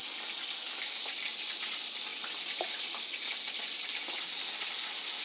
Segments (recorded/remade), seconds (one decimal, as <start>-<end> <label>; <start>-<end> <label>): 0.0-5.2 recorded